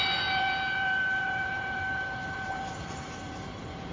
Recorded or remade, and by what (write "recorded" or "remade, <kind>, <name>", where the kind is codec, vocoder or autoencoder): remade, vocoder, BigVGAN v2